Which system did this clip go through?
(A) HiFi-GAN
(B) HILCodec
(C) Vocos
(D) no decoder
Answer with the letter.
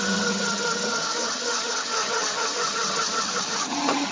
A